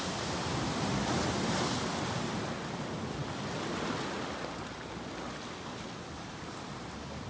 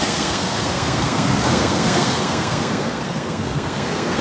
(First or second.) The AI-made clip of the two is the second